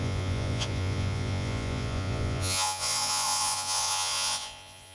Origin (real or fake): fake